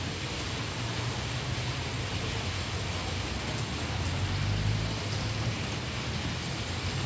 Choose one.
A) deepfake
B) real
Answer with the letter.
B